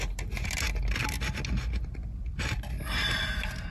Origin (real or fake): real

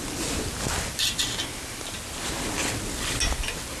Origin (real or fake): real